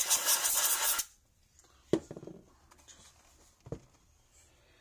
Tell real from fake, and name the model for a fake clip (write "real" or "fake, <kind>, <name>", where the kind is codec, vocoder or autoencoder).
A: real